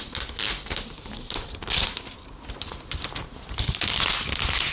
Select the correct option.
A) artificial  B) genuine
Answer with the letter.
B